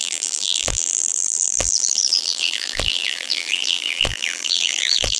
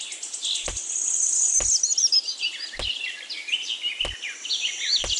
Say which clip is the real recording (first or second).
second